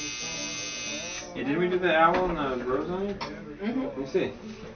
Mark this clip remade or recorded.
recorded